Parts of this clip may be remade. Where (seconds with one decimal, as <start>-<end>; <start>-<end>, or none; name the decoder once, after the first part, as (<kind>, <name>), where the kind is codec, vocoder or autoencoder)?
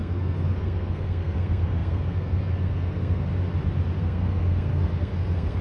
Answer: 0.0-3.3 (codec, SNAC); 4.0-5.6